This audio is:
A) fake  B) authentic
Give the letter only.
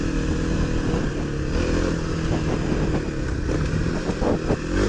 B